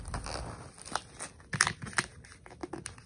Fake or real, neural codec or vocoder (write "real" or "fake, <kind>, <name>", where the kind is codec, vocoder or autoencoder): real